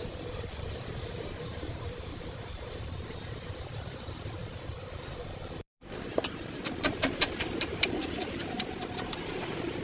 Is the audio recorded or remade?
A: remade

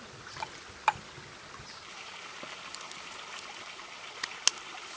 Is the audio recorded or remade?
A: recorded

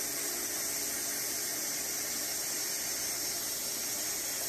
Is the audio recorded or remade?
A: recorded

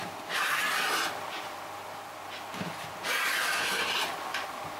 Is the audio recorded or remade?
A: recorded